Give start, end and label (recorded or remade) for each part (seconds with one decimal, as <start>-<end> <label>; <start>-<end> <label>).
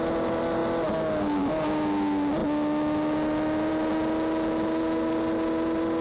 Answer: 0.0-6.0 recorded